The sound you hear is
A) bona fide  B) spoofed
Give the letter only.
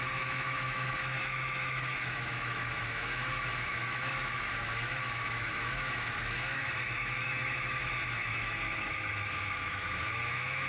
B